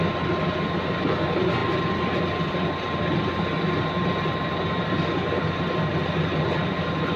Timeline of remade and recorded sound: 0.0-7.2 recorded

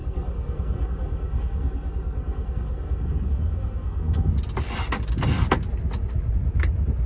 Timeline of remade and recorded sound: 0.0-4.3 remade; 4.3-7.1 recorded

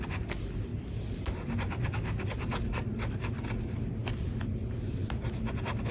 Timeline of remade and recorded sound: 0.0-5.9 recorded

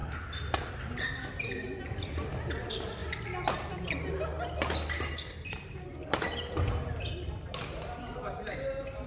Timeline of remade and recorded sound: 0.0-9.1 recorded

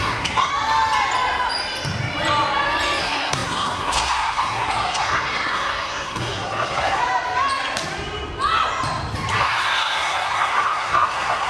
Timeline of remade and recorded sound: 0.0-0.5 remade; 0.5-3.0 recorded; 3.0-7.0 remade; 7.0-9.3 recorded; 9.3-11.5 remade